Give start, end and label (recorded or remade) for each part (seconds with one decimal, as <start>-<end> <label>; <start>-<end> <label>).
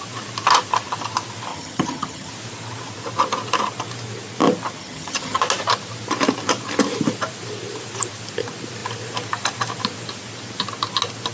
0.0-1.5 recorded; 1.5-2.3 remade; 2.3-4.8 recorded; 4.8-5.4 remade; 5.4-11.3 recorded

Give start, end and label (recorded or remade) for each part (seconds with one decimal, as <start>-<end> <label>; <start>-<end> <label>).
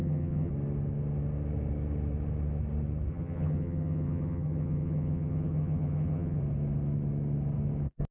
0.0-0.5 remade; 0.5-3.1 recorded; 3.1-6.4 remade; 6.4-8.1 recorded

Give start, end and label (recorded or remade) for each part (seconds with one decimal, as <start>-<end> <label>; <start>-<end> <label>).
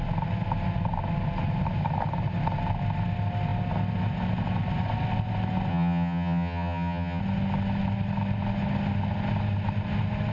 0.0-5.7 recorded; 5.7-7.2 remade; 7.2-10.3 recorded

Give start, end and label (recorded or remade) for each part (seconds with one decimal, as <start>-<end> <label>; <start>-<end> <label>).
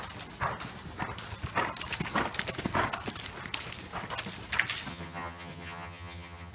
0.0-4.9 recorded; 4.9-6.5 remade